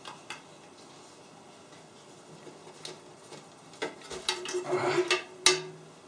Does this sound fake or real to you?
real